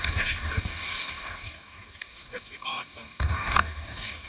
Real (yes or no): no